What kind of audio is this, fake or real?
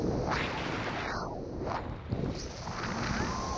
real